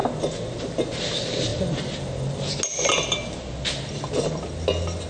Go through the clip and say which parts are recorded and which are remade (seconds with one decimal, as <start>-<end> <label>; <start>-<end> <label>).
0.0-5.1 recorded